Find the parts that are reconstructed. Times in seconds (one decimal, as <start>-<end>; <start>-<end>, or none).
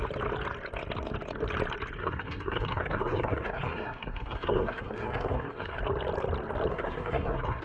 2.0-5.8; 6.7-7.6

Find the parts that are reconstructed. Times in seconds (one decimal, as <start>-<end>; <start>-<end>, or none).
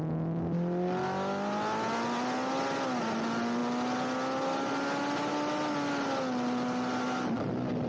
none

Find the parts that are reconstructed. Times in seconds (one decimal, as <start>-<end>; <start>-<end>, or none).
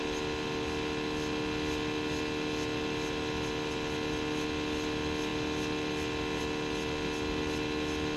none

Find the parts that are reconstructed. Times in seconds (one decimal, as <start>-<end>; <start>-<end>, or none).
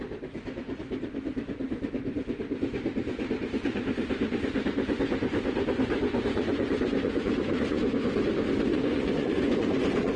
6.0-8.2; 8.7-10.2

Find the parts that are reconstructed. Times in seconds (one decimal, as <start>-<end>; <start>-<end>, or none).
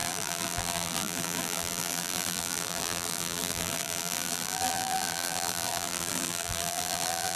0.0-7.4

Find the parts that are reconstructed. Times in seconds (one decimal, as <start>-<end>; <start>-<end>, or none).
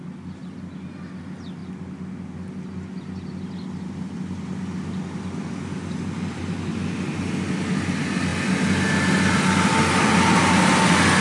none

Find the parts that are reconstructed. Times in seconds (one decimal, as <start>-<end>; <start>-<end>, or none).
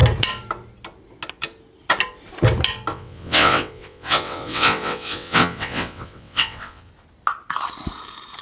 2.9-6.9